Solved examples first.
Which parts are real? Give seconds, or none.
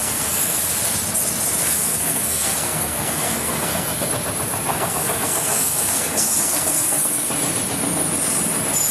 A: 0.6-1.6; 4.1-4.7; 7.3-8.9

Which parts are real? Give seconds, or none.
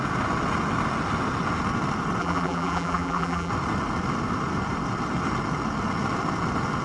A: 0.0-2.2; 3.5-6.8